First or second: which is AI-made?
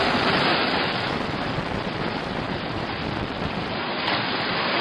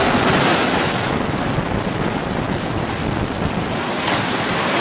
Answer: first